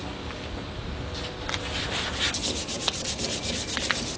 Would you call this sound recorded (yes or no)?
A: yes